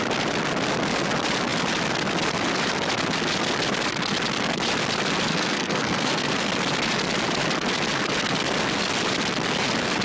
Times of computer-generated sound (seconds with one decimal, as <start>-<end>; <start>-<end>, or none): 5.3-6.5